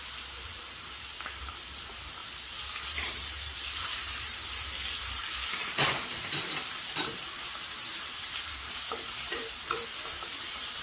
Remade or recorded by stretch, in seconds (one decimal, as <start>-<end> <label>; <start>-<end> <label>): 0.0-2.2 remade; 2.2-2.9 recorded; 2.9-4.4 remade; 4.4-5.6 recorded; 5.6-10.8 remade